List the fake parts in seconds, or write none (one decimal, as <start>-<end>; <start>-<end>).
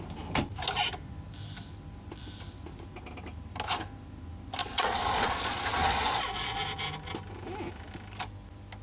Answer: 4.6-6.6